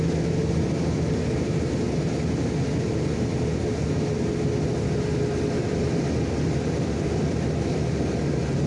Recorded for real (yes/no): yes